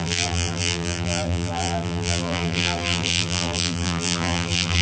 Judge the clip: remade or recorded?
remade